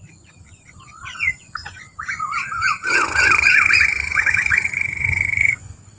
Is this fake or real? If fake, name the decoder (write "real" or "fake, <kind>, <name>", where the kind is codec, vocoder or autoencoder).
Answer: fake, vocoder, Vocos